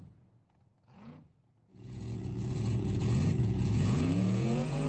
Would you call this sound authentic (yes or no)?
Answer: no